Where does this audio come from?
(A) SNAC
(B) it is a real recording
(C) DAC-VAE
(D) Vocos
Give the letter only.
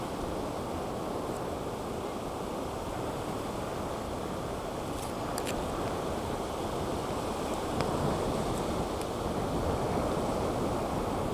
B